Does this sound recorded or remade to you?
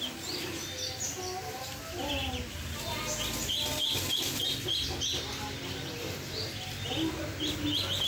recorded